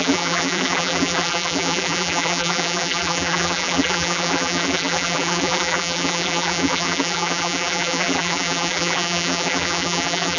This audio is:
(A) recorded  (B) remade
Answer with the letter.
B